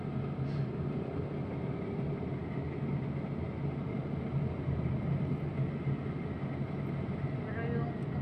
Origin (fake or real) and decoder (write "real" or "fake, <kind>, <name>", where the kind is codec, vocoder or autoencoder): real